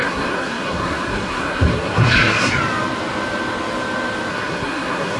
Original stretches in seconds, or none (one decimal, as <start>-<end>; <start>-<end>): 2.5-4.3